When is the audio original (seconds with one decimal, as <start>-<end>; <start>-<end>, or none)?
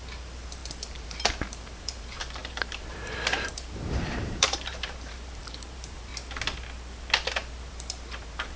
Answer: 6.1-7.7